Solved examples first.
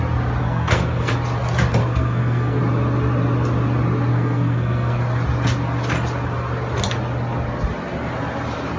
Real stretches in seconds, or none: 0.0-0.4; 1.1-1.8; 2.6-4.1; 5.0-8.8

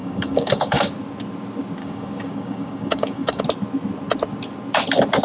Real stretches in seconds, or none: 0.9-1.8; 3.4-5.2

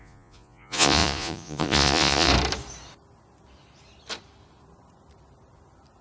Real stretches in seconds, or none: 2.3-6.0

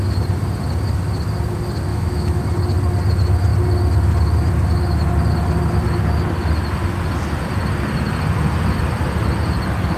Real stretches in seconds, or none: 0.0-1.9; 2.4-10.0

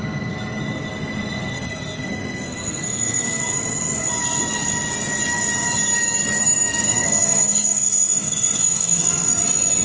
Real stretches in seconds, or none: 0.0-1.5; 3.4-6.4; 9.3-9.8

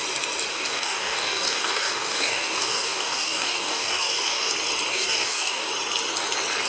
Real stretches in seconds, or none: 0.0-0.5; 4.5-4.9; 5.7-6.7